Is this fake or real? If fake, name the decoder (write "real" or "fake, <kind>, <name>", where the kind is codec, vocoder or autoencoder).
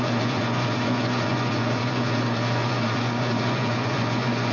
fake, vocoder, Vocos